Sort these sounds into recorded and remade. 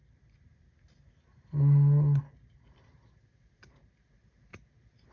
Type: recorded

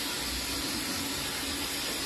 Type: recorded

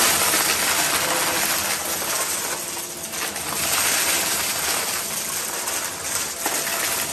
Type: recorded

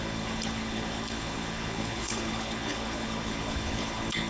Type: remade